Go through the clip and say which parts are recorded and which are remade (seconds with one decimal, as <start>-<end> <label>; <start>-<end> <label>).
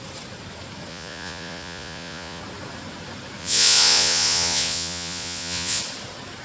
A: 0.0-0.9 recorded; 0.9-2.4 remade; 2.4-3.4 recorded; 3.4-5.8 remade; 5.8-6.4 recorded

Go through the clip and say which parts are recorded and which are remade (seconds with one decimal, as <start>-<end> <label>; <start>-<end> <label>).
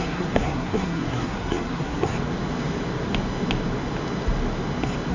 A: 0.0-2.1 remade; 2.1-5.1 recorded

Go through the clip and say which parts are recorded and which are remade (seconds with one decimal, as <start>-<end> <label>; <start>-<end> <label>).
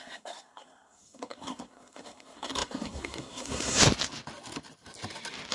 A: 0.0-3.9 remade; 3.9-5.5 recorded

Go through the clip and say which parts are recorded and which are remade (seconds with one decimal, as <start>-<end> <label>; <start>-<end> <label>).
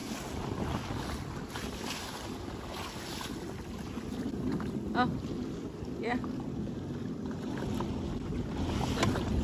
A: 0.0-9.4 recorded